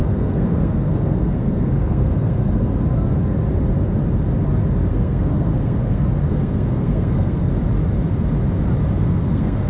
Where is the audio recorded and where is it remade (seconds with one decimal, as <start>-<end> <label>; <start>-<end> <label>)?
0.0-2.7 remade; 2.7-4.9 recorded; 4.9-7.5 remade; 7.5-9.0 recorded; 9.0-9.7 remade